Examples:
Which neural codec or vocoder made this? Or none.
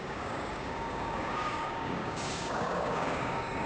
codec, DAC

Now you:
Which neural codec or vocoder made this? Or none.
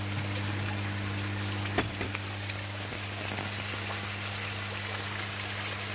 vocoder, BigVGAN v2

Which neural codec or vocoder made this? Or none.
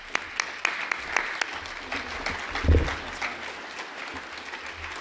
none